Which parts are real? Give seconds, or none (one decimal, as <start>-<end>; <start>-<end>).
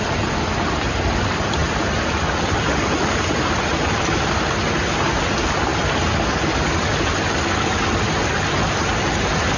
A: 0.0-9.6